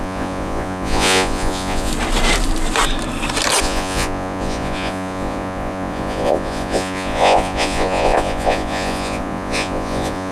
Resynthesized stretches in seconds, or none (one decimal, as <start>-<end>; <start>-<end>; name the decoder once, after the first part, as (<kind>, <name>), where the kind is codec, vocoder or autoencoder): 0.0-1.9 (vocoder, Vocos); 3.6-10.3